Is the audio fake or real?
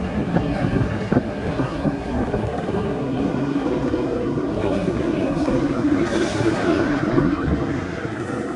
fake